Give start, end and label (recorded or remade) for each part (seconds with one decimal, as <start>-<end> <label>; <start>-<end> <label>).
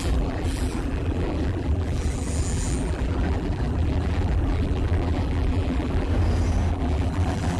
0.0-6.1 remade; 6.1-6.7 recorded; 6.7-7.6 remade